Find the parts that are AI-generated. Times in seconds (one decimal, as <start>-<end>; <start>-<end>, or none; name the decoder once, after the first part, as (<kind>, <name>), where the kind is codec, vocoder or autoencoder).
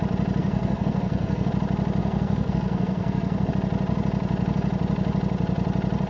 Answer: 0.4-1.5 (codec, SNAC); 2.0-3.5